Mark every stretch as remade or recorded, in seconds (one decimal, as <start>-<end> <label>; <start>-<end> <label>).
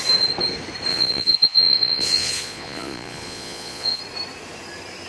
0.0-0.9 recorded; 0.9-4.0 remade; 4.0-5.1 recorded